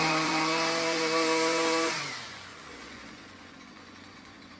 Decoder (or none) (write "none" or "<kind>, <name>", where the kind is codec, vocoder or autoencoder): vocoder, Vocos